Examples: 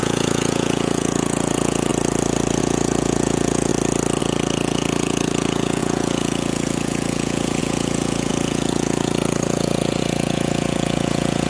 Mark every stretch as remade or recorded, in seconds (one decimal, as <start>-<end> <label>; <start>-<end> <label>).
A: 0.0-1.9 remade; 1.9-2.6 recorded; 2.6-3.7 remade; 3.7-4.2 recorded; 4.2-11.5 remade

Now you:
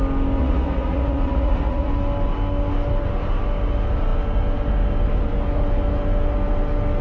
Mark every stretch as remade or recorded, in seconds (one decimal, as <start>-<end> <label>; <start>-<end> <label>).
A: 0.0-0.4 recorded; 0.4-1.9 remade; 1.9-7.0 recorded

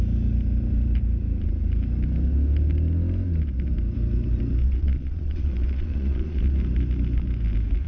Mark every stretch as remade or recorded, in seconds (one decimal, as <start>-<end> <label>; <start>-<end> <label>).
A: 0.0-4.6 recorded; 4.6-6.5 remade; 6.5-7.9 recorded

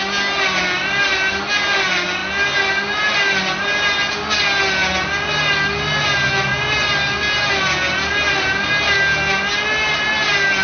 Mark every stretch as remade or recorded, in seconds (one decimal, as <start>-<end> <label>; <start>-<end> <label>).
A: 0.0-10.6 recorded

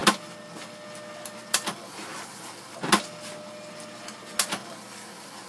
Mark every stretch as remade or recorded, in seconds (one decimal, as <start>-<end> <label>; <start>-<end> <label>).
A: 0.0-5.5 recorded

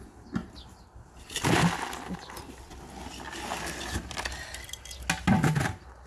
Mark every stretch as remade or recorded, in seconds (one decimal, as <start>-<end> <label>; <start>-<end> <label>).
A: 0.0-6.1 recorded